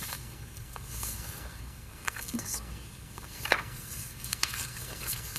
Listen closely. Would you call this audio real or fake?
fake